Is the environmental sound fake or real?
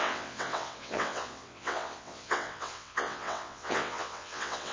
fake